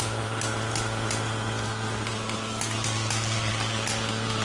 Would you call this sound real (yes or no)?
yes